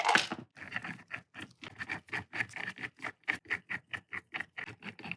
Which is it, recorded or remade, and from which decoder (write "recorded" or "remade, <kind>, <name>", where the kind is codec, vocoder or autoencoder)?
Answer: recorded